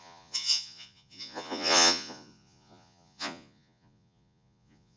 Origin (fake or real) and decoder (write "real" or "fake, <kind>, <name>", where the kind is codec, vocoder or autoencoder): fake, vocoder, Vocos